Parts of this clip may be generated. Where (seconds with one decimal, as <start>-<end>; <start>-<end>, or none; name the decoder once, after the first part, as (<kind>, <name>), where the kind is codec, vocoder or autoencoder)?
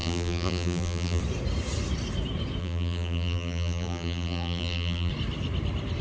0.0-1.2 (vocoder, BigVGAN v2); 2.6-5.1